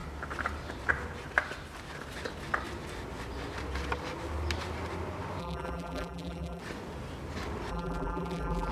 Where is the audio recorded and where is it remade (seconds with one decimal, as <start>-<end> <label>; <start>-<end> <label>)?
0.0-5.4 recorded; 5.4-6.6 remade; 6.6-7.7 recorded; 7.7-8.7 remade